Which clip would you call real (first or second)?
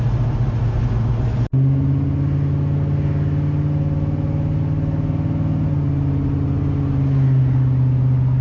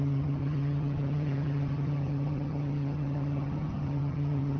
first